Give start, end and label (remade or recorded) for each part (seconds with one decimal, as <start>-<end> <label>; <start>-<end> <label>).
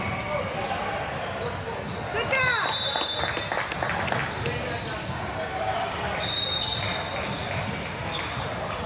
0.0-8.9 recorded